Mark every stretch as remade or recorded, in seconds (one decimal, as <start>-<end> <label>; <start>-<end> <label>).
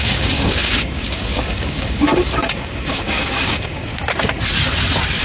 0.0-3.9 remade; 3.9-5.2 recorded